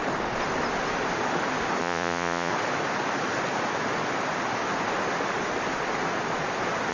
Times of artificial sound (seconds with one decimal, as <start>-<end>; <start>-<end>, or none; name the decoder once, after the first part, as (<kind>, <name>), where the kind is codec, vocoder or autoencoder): 1.8-2.5 (vocoder, Vocos)